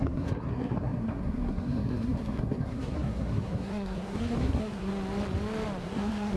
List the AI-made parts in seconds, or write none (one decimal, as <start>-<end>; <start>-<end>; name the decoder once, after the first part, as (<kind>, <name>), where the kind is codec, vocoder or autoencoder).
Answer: 0.0-4.9 (codec, SNAC); 5.8-6.4